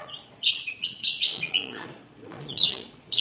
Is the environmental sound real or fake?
fake